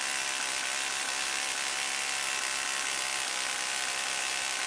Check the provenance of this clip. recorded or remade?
recorded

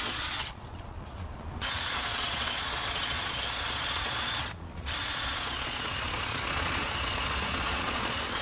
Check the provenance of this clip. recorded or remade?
remade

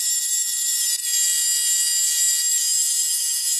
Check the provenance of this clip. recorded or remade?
recorded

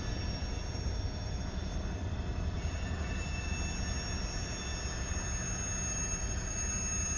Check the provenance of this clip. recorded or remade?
recorded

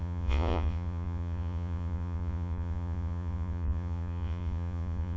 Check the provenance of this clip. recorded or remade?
remade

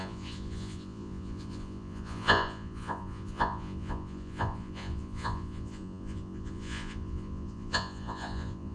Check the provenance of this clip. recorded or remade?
remade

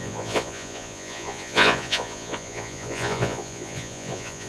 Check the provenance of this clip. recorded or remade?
remade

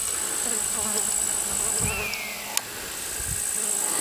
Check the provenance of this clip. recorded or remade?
recorded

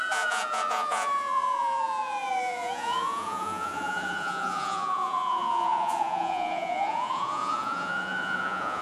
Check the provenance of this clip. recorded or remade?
remade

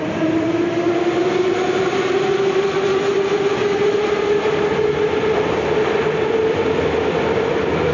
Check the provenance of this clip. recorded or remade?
recorded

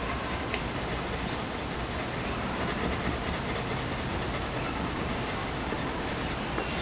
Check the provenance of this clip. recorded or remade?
recorded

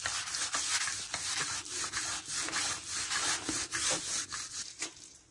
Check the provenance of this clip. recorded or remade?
recorded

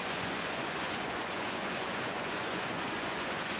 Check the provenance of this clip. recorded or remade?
remade